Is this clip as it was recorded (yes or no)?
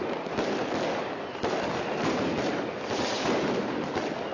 no